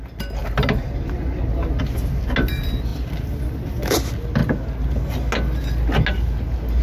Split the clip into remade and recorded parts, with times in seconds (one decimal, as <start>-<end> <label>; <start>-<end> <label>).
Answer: 0.0-6.8 recorded